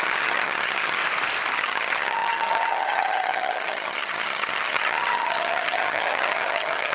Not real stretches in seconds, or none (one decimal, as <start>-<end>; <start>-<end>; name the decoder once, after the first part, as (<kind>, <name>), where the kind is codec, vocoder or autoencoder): 0.0-1.0 (vocoder, HiFi-GAN); 1.5-6.9